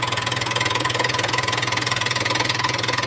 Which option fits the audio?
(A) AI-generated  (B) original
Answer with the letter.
A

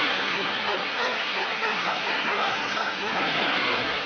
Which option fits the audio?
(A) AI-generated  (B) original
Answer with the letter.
A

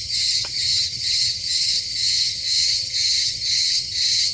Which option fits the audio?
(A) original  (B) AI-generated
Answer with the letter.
B